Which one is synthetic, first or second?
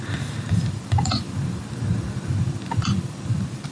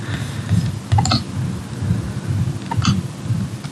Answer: first